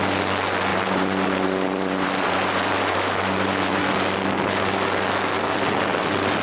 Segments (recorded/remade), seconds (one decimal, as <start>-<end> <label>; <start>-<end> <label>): 0.0-0.7 recorded; 0.7-3.8 remade; 3.8-6.4 recorded